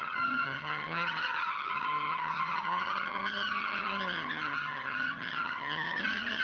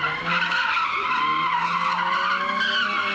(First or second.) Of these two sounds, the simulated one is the first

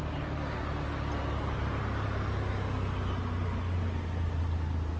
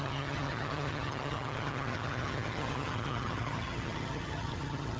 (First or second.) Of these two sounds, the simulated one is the second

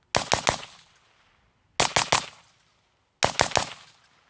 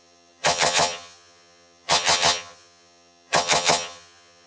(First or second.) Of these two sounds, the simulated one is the second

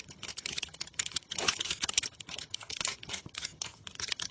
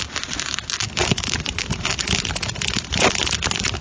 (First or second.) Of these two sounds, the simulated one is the first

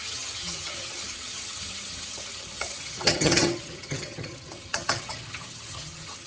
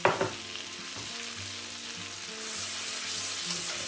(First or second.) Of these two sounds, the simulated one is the first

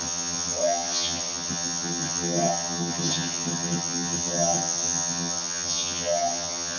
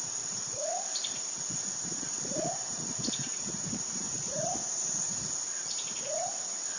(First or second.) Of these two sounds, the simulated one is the first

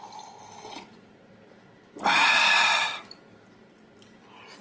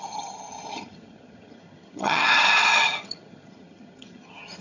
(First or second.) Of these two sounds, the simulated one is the second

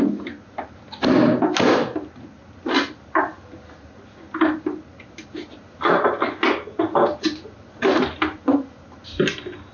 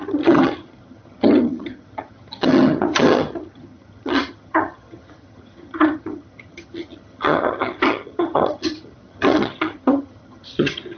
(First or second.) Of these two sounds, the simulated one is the second